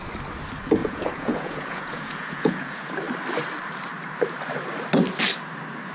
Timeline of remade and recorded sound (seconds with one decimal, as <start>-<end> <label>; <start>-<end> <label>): 0.0-0.8 recorded; 0.8-2.9 remade; 2.9-5.9 recorded